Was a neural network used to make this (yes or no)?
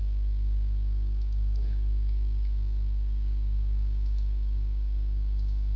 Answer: yes